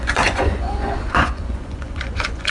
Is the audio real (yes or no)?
no